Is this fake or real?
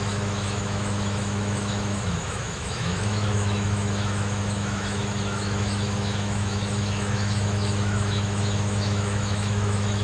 fake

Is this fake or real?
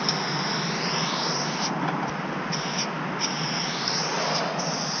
real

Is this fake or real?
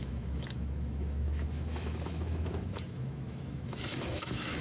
fake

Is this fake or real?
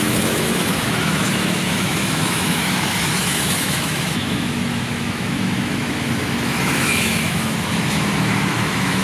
fake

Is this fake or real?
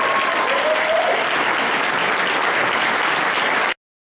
real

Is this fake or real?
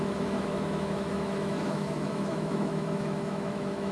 fake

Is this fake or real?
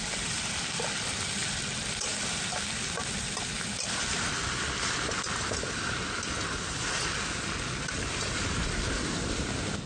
real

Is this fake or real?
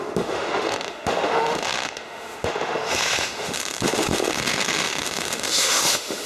fake